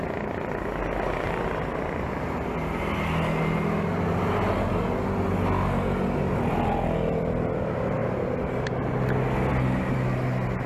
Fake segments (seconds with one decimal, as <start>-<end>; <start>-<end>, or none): none